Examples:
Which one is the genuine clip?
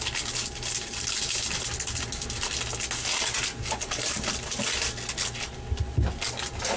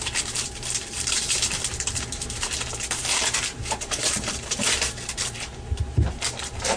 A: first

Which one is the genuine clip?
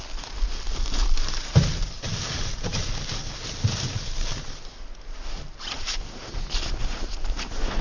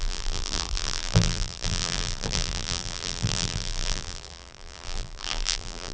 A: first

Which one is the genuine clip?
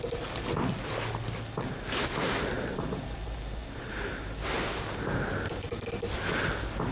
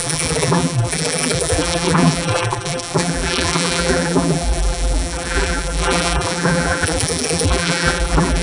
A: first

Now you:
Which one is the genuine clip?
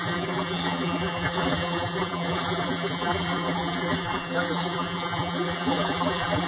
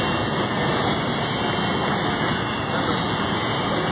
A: second